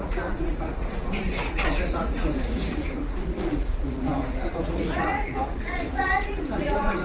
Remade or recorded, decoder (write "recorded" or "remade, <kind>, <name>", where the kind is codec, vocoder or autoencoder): remade, vocoder, Vocos